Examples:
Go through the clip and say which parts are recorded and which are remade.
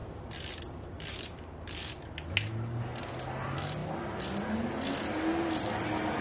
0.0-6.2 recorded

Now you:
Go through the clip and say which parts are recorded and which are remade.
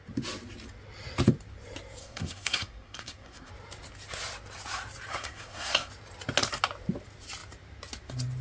0.0-2.0 recorded; 2.0-3.5 remade; 3.5-5.1 recorded; 5.1-5.9 remade; 5.9-8.4 recorded